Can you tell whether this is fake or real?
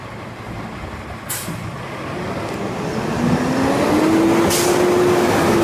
real